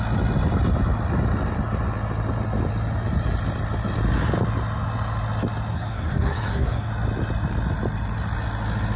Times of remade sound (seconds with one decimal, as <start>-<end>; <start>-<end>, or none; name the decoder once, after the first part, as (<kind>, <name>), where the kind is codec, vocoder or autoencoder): 5.7-6.9 (codec, SNAC)